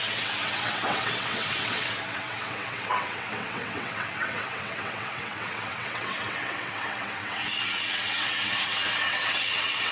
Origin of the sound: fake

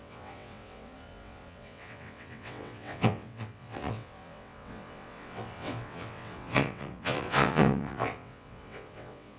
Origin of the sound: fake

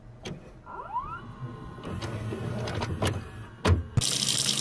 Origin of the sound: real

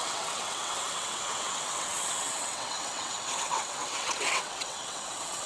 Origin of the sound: fake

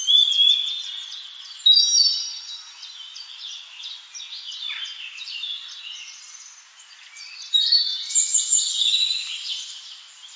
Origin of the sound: real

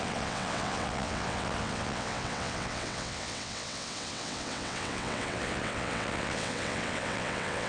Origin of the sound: fake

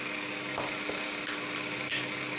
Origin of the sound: real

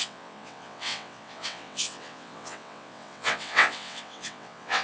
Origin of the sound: fake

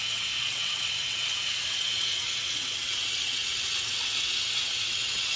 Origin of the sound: fake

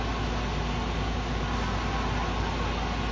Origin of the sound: real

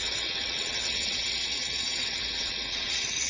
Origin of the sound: fake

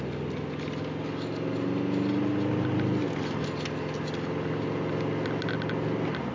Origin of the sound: real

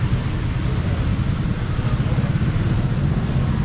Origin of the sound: real